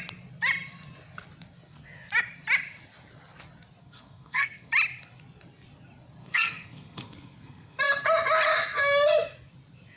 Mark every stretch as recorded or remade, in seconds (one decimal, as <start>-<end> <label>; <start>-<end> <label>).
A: 0.0-3.8 recorded; 3.8-4.7 remade; 4.7-6.2 recorded; 6.2-7.8 remade; 7.8-10.0 recorded